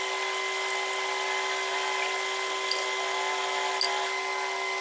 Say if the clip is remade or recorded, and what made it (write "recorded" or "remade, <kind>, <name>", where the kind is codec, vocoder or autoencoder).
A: recorded